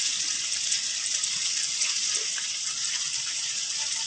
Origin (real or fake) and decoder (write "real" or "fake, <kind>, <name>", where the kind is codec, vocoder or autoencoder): real